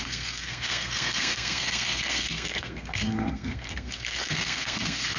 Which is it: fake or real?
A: fake